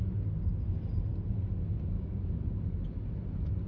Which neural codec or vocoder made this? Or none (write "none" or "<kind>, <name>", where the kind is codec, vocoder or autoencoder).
none